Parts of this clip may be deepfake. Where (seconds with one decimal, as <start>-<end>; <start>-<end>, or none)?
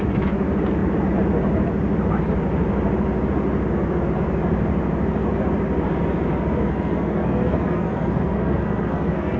6.3-9.4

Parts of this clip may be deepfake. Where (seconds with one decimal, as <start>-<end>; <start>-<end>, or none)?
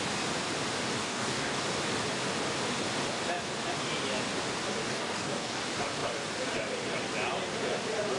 1.0-1.6; 4.9-5.6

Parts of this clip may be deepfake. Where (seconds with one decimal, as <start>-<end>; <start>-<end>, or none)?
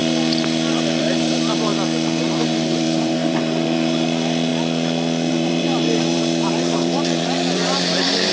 1.0-1.7; 2.2-4.5; 5.3-8.3